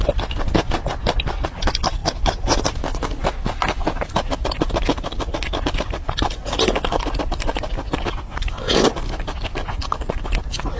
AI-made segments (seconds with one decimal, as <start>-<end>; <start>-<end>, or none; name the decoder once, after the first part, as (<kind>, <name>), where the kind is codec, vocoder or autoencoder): none